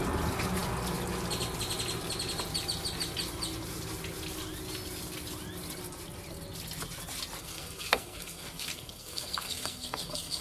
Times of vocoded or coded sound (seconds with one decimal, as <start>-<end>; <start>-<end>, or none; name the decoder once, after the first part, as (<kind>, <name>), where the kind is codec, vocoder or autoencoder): 7.4-10.4 (codec, SNAC)

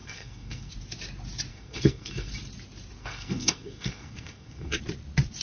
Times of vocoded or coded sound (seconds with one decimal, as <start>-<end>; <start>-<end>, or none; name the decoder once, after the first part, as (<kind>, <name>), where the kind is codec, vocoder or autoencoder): 0.0-0.7 (codec, SNAC); 1.5-2.3; 3.0-4.8

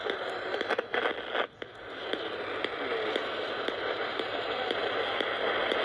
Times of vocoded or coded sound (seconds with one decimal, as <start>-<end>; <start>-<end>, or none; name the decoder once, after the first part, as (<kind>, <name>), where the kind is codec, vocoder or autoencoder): 0.0-1.0 (vocoder, BigVGAN v2); 3.2-4.8

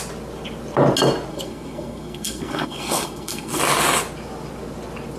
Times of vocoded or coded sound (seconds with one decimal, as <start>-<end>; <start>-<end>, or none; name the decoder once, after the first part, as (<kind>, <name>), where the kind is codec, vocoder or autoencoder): 1.3-3.6 (codec, SNAC)

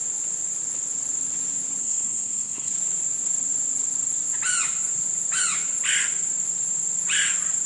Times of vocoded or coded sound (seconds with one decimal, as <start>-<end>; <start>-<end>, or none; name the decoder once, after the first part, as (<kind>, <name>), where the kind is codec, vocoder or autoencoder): 1.8-2.7 (codec, SNAC)

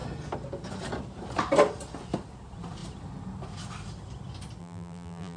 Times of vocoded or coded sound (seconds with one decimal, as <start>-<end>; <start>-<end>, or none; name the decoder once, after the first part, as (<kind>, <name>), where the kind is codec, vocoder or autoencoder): 4.6-5.4 (vocoder, BigVGAN v2)

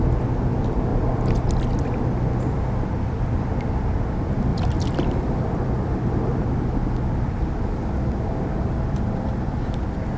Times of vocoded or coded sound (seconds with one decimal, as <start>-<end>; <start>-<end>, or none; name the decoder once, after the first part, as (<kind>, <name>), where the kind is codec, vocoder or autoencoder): 0.9-2.0 (vocoder, BigVGAN v2); 4.5-6.4

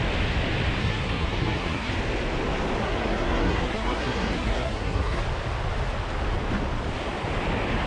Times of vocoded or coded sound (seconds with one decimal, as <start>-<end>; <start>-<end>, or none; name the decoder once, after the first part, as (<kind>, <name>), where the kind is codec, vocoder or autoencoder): 0.8-1.9 (codec, SNAC); 2.8-5.2